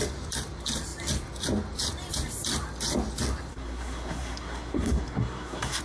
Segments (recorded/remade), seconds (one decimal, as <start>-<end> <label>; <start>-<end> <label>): 0.0-3.5 recorded; 3.5-5.8 remade